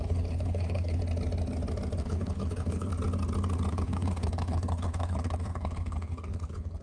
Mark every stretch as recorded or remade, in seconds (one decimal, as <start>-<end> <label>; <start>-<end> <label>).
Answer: 0.0-1.0 remade; 1.0-2.0 recorded; 2.0-2.9 remade; 2.9-3.7 recorded; 3.7-6.8 remade